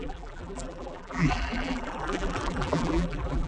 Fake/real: fake